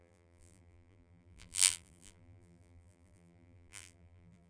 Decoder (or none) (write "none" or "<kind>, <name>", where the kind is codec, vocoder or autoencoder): vocoder, BigVGAN v2